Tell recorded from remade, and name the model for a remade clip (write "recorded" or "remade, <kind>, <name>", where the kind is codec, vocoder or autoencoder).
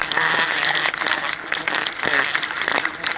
recorded